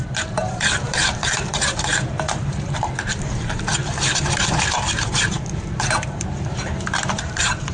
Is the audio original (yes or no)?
no